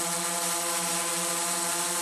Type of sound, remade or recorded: recorded